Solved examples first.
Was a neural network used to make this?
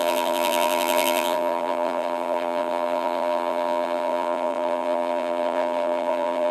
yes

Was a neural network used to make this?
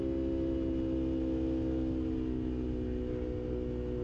no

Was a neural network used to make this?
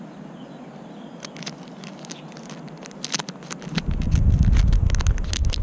no